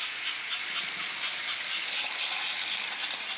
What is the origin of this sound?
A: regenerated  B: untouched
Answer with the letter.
B